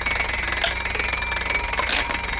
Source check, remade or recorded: recorded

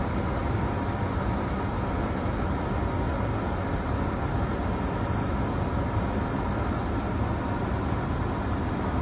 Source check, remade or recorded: recorded